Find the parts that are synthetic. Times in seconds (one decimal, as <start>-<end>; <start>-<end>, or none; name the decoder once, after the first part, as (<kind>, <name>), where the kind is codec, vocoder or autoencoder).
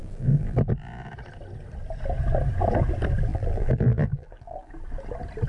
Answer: 0.0-0.7 (vocoder, BigVGAN v2); 3.3-4.7